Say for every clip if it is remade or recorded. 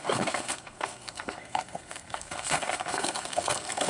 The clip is remade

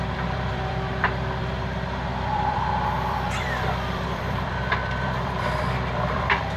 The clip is remade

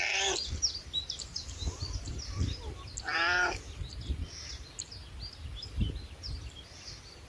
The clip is recorded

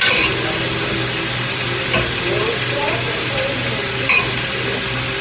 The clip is recorded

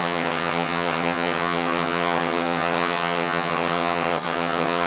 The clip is remade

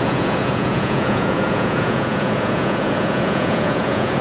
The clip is remade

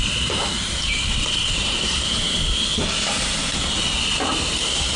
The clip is remade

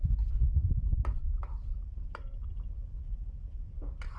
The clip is recorded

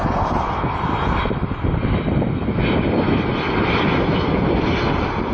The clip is recorded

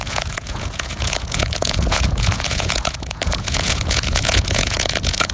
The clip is remade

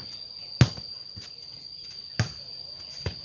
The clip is recorded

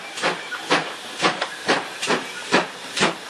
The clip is remade